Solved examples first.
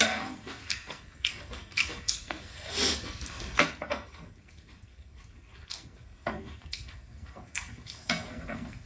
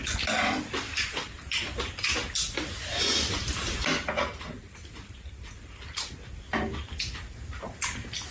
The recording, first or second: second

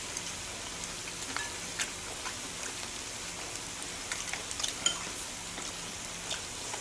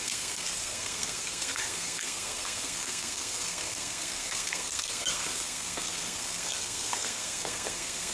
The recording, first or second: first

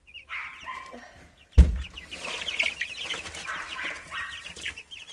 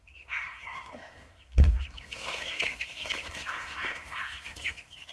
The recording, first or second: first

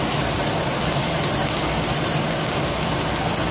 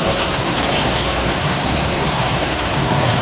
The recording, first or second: first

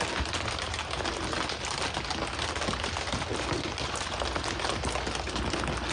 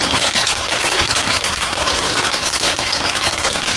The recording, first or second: first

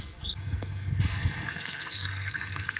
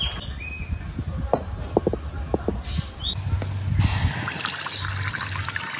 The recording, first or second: second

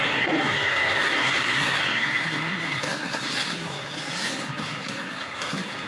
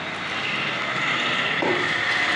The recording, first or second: second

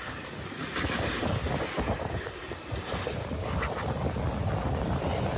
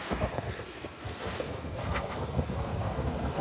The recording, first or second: first